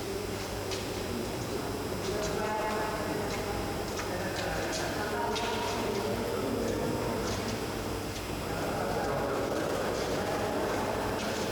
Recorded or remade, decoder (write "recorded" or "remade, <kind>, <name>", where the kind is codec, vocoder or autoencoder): remade, vocoder, BigVGAN v2